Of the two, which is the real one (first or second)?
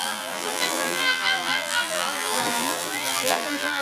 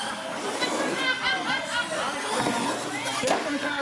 second